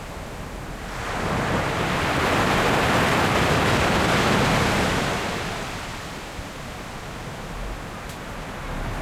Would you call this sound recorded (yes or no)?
yes